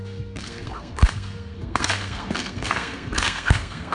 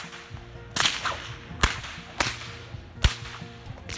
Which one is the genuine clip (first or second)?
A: second